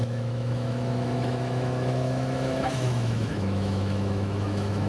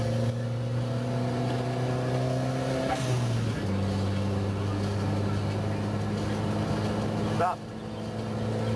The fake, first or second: first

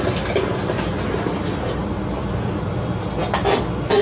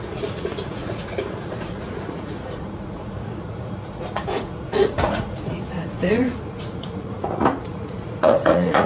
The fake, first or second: second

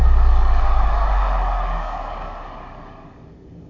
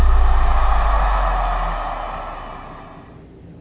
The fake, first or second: first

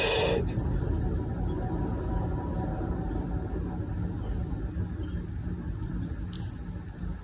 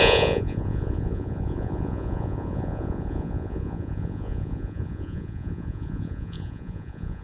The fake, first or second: second